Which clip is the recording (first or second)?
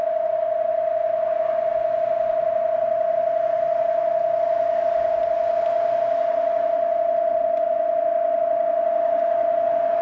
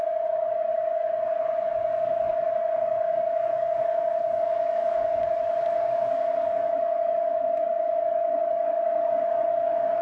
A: first